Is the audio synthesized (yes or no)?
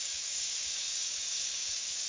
yes